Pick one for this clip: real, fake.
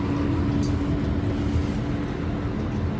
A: real